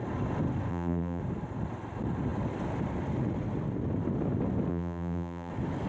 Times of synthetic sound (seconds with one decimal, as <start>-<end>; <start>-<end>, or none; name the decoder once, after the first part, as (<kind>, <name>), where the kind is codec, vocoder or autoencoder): 0.7-1.2 (vocoder, BigVGAN v2); 4.7-5.5